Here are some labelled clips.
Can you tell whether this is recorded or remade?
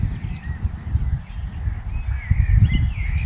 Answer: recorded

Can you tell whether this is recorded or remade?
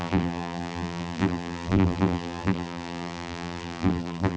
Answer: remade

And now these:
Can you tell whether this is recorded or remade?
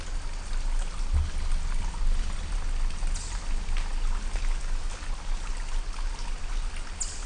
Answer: recorded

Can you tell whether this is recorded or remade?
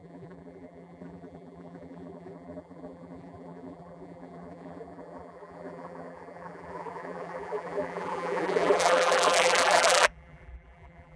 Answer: remade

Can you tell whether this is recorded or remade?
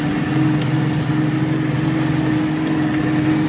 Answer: recorded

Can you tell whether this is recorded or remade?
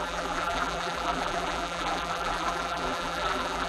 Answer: remade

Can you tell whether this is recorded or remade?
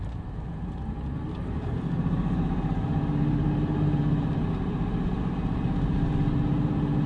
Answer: remade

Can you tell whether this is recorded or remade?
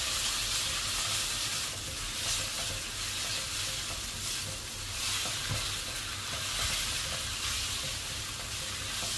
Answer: recorded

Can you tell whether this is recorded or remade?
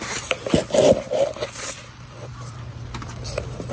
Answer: recorded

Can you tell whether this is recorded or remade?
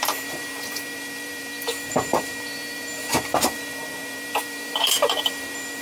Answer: remade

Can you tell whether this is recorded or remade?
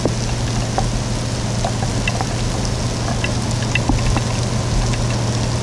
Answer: recorded